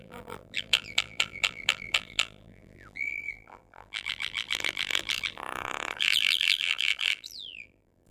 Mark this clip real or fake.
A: fake